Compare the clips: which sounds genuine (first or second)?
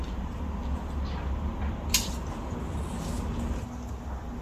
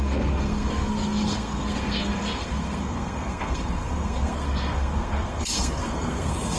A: first